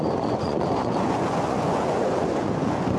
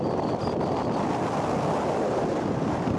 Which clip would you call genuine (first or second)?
second